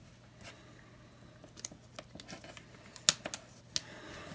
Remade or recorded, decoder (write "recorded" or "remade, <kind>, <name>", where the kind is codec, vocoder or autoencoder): recorded